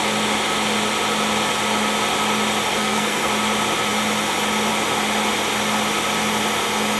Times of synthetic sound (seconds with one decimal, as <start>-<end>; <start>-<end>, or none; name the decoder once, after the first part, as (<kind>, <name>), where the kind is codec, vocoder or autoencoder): 2.7-3.3 (codec, SNAC)

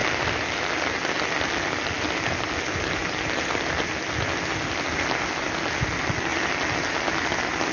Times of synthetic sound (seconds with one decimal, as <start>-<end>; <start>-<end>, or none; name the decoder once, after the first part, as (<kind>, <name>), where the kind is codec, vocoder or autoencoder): none

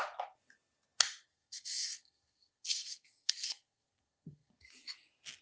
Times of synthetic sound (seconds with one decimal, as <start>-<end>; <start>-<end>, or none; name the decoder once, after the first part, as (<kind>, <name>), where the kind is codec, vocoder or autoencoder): 1.3-4.5 (codec, SNAC)

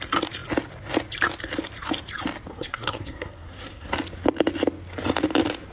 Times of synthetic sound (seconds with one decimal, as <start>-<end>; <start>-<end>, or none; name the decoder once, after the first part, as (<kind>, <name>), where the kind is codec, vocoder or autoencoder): 2.5-3.9 (codec, SNAC)

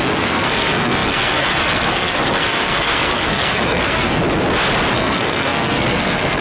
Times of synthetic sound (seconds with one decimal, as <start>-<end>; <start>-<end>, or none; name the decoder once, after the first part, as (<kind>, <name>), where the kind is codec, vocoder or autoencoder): 0.0-4.2 (codec, SNAC); 4.9-6.4

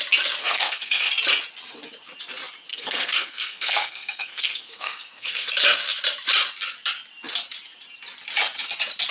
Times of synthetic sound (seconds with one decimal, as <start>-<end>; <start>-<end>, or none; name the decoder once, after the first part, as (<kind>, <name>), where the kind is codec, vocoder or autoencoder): 0.4-1.1 (codec, SNAC); 2.7-5.5